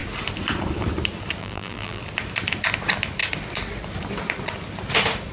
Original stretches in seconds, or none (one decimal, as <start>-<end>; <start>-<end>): 0.0-1.4; 2.0-5.3